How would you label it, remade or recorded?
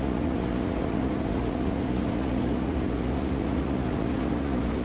remade